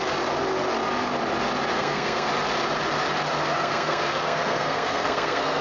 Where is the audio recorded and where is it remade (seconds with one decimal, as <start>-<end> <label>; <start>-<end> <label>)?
0.0-1.7 recorded; 1.7-2.3 remade; 2.3-3.5 recorded; 3.5-5.6 remade